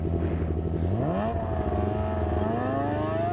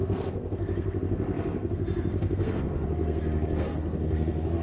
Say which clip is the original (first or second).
first